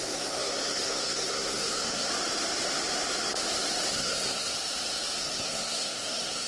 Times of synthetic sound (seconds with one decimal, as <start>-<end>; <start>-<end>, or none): 0.0-2.1; 3.9-4.5; 5.2-6.5